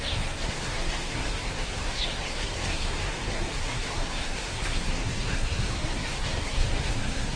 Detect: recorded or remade remade